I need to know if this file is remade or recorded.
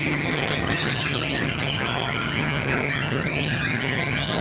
remade